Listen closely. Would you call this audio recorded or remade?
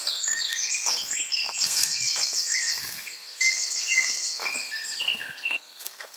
remade